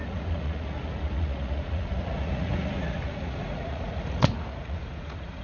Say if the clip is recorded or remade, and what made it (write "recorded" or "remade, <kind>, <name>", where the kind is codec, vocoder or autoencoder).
remade, vocoder, Vocos